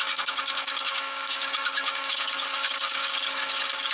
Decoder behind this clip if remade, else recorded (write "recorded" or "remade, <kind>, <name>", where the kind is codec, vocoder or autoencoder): remade, codec, DAC